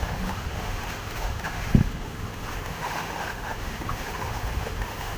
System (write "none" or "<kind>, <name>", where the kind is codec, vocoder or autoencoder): autoencoder, DAC-VAE